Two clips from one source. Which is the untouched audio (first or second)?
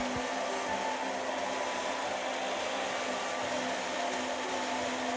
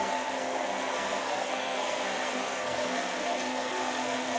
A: first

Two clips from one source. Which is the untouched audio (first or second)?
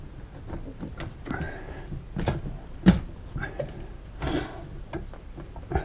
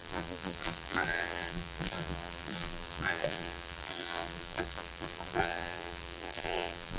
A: first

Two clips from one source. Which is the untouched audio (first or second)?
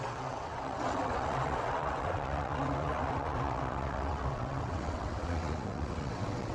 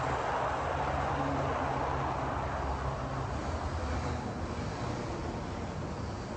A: second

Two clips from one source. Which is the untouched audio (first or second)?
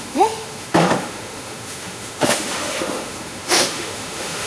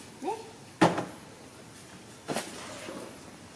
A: second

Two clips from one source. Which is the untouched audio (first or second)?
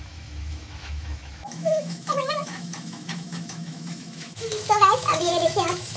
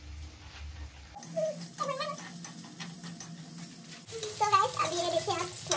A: second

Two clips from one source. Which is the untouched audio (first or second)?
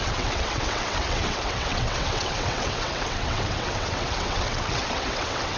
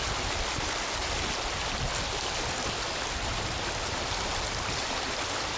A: second